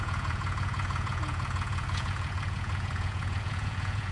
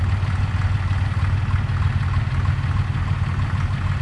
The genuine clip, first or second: second